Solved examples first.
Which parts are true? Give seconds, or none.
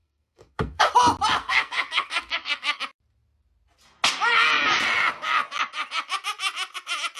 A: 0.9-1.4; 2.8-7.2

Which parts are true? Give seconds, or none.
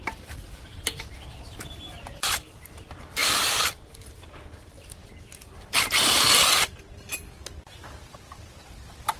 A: 0.0-9.2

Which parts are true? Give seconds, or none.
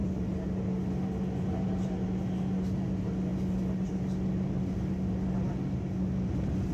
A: 0.0-6.7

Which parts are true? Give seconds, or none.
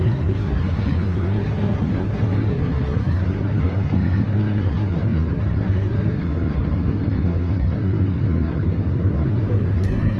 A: none